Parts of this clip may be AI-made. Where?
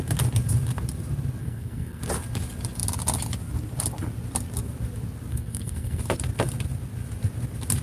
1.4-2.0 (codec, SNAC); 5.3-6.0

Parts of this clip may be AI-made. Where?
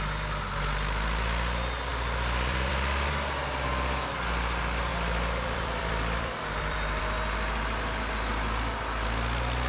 1.9-2.7 (vocoder, BigVGAN v2); 4.9-7.0